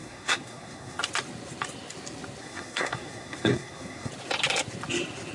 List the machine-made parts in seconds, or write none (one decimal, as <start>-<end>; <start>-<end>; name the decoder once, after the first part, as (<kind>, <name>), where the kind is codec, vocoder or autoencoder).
0.0-1.0 (codec, SNAC); 2.4-4.1